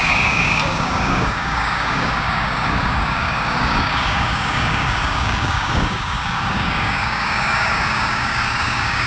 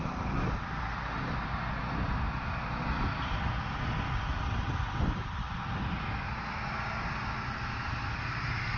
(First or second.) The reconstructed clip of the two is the first